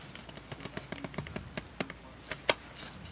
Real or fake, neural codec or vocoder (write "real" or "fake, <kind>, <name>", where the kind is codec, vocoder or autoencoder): real